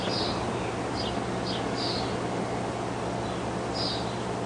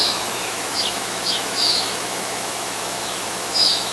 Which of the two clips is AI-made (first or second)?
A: second